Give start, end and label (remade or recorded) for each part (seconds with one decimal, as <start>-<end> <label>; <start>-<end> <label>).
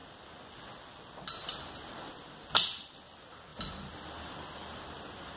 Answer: 0.0-5.4 recorded